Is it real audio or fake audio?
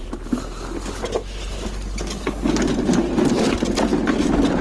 real